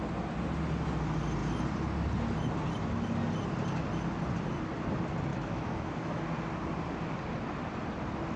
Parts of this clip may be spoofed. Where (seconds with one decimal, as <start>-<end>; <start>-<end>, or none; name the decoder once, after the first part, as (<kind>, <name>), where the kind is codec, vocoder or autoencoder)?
5.3-6.2 (autoencoder, DAC-VAE)